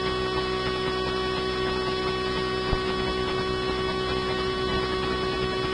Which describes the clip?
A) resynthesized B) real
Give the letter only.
B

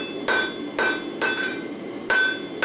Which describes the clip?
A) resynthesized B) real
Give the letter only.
B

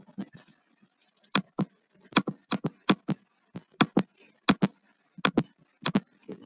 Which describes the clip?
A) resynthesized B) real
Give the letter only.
B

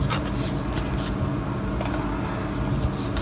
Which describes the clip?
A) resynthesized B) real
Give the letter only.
B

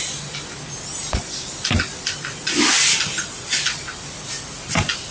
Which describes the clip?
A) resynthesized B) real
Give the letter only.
B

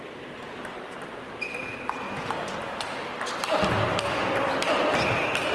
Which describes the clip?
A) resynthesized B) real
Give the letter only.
B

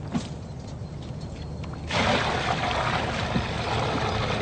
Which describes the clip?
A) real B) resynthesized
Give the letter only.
A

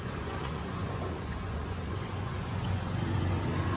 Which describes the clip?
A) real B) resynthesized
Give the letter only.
B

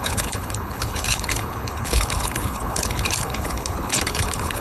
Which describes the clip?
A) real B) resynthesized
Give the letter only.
B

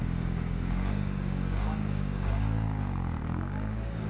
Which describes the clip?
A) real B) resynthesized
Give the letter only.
B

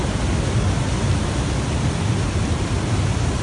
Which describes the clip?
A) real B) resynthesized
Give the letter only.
A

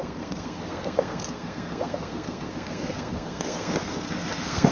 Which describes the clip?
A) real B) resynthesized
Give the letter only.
B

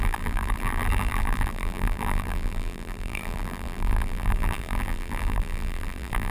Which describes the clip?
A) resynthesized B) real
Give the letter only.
A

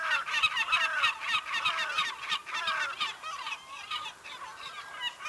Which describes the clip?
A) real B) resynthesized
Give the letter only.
A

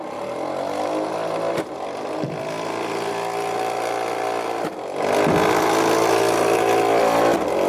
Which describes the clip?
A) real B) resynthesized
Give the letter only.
A